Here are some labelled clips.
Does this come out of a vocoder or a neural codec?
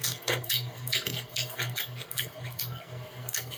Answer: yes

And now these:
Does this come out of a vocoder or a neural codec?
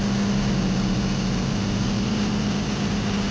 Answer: no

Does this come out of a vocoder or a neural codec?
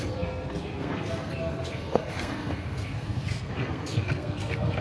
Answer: yes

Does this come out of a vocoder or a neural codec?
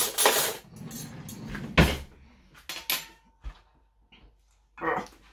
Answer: no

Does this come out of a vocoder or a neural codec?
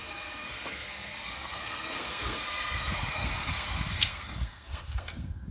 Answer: yes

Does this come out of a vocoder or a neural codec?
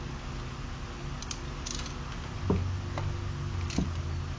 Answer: no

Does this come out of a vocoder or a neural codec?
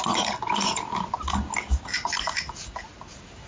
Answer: no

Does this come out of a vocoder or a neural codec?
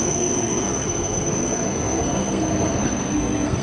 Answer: yes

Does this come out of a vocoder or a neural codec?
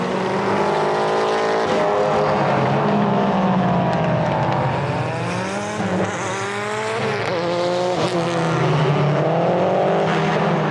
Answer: no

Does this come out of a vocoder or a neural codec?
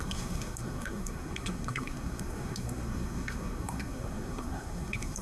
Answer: yes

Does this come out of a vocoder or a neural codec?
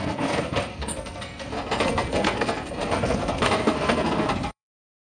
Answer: yes